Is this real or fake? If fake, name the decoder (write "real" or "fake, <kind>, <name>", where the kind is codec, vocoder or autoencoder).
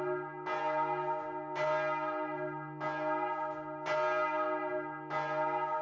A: real